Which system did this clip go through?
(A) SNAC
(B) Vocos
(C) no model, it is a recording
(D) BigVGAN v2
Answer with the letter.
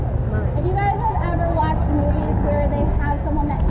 C